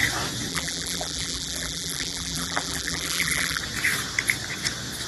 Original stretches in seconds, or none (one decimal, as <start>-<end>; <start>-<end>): 0.0-0.5; 3.6-5.1